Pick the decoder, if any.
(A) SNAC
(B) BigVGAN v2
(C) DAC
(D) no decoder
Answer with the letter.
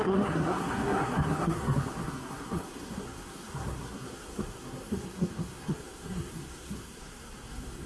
A